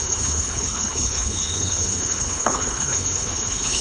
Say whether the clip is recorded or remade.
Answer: remade